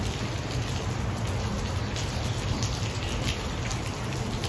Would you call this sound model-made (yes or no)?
no